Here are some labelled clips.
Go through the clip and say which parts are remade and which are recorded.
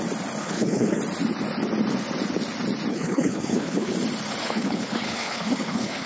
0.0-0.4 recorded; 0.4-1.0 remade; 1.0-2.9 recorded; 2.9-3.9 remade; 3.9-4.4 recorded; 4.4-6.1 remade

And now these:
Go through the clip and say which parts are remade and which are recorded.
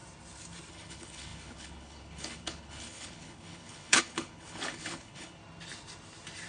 0.0-0.7 recorded; 0.7-5.4 remade; 5.4-6.5 recorded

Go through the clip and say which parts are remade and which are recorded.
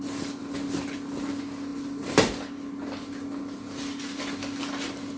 0.0-5.2 recorded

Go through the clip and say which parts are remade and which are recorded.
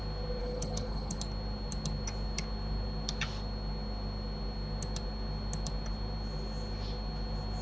0.0-0.4 recorded; 0.4-1.2 remade; 1.2-7.6 recorded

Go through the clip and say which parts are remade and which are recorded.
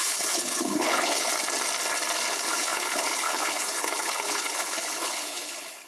0.0-1.3 remade; 1.3-2.3 recorded; 2.3-5.9 remade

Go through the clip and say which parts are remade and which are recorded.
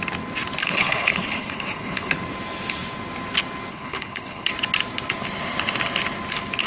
0.0-0.6 recorded; 0.6-2.1 remade; 2.1-3.7 recorded; 3.7-4.5 remade; 4.5-6.7 recorded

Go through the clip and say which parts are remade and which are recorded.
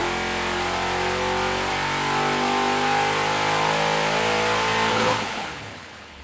0.0-4.9 recorded; 4.9-6.2 remade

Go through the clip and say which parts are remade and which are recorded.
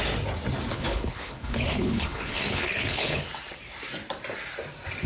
0.0-0.7 recorded; 0.7-3.2 remade; 3.2-5.1 recorded